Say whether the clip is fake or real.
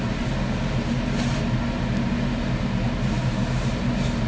real